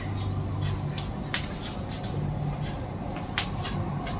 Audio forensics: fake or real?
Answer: real